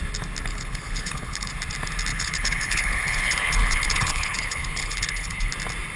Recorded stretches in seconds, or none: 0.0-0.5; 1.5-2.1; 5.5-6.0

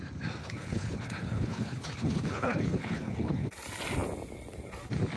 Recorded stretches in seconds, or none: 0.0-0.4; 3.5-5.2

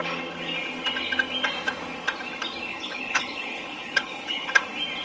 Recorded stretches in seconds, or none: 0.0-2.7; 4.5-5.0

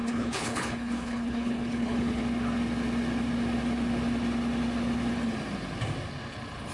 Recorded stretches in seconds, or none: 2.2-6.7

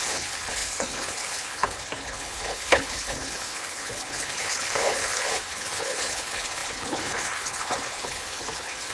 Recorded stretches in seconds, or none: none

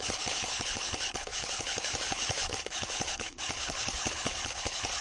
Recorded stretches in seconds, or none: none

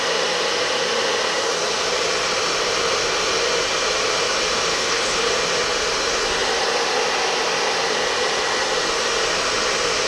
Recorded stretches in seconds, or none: 0.0-4.7; 5.3-10.1

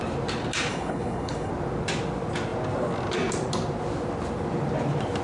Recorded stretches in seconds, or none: 0.0-0.7; 1.5-5.2